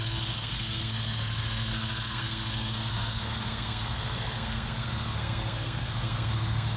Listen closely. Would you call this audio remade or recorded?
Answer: remade